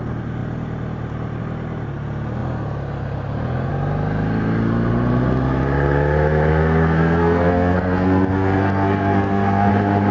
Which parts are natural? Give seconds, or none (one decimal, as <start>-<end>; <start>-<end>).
0.0-6.5; 9.7-10.1